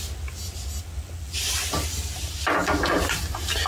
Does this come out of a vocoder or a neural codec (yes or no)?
no